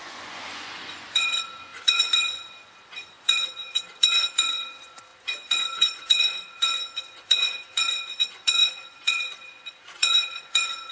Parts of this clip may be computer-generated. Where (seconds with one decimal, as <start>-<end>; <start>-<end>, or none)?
0.0-10.9